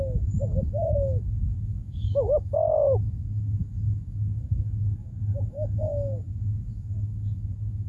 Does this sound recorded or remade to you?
remade